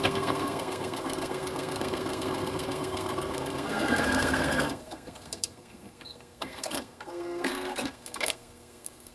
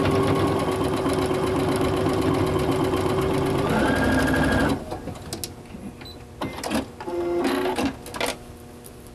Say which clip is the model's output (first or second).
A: first